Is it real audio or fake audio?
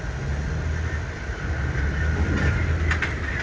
real